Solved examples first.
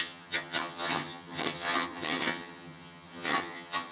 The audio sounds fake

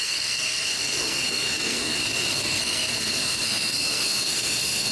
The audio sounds fake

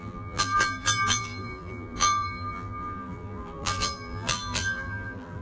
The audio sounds fake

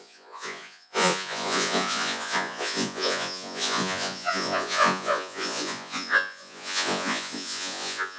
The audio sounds fake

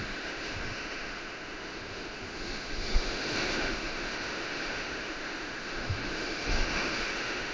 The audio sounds fake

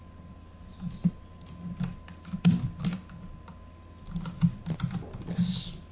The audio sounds real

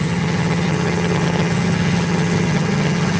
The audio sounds fake